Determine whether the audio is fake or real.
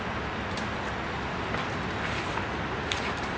real